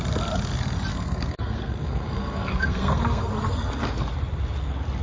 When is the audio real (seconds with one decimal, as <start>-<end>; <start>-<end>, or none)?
0.0-0.9; 3.3-5.0